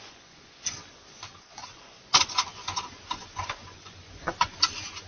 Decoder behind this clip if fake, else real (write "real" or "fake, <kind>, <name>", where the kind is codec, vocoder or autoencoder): fake, vocoder, Vocos